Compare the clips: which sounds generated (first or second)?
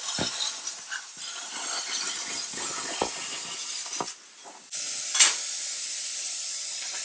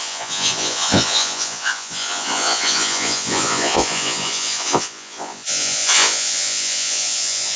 second